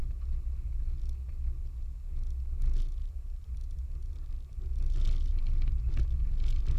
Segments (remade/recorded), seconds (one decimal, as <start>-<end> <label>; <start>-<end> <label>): 0.0-3.0 recorded; 3.0-4.3 remade; 4.3-6.8 recorded